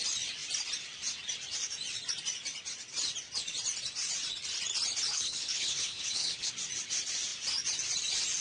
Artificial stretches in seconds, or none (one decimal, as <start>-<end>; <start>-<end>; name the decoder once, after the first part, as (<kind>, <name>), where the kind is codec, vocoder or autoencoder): 5.1-6.5 (codec, HILCodec)